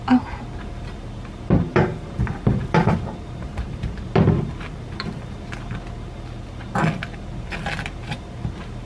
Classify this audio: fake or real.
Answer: real